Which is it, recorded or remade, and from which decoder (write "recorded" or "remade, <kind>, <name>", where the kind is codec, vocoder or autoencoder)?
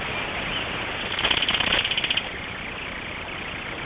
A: recorded